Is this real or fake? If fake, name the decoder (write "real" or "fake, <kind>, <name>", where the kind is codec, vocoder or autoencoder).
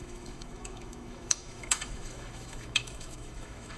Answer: fake, autoencoder, DAC-VAE